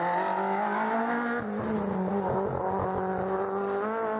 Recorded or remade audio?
recorded